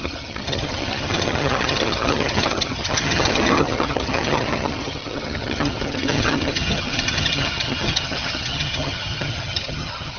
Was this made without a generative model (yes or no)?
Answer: no